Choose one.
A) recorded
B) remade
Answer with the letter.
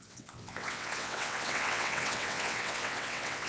B